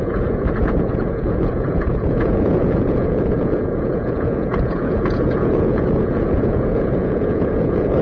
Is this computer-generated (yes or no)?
yes